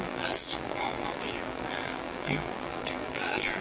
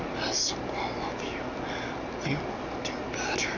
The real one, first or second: second